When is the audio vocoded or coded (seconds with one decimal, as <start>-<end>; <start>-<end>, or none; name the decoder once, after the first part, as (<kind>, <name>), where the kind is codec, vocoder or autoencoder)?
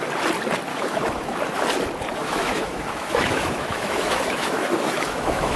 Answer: 0.7-1.4 (autoencoder, DAC-VAE); 2.2-5.6